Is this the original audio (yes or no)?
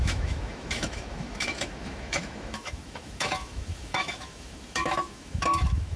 no